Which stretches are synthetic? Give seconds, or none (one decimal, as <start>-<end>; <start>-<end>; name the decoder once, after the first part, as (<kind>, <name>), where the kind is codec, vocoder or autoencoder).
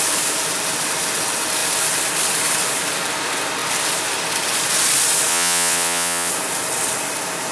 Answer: 5.3-6.3 (vocoder, WaveNeXt)